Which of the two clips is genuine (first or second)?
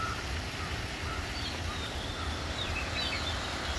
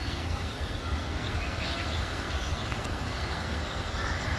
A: first